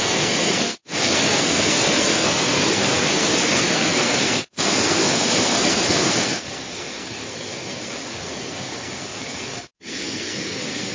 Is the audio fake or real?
fake